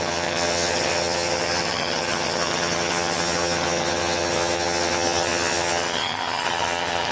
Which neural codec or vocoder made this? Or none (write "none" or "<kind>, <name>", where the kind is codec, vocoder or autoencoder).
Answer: vocoder, HiFi-GAN